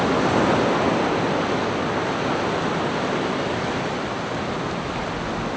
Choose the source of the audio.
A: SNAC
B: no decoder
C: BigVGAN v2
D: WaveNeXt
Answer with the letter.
B